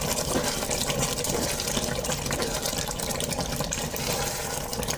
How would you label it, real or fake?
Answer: real